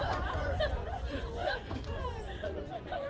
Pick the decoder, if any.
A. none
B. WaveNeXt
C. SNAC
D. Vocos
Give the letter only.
D